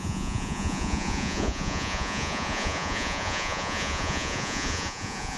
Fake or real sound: fake